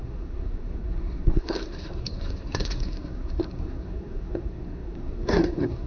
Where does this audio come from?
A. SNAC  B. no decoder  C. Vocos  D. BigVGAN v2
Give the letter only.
A